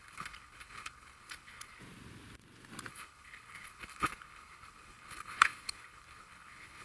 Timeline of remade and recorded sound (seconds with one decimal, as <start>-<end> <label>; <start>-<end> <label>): 0.0-1.8 remade; 1.8-2.9 recorded; 2.9-6.8 remade